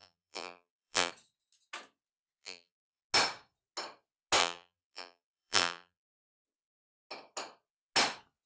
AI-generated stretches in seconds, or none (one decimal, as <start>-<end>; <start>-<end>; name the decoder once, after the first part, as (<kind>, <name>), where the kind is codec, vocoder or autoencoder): 0.0-1.1 (vocoder, BigVGAN v2); 2.4-3.0; 4.4-6.4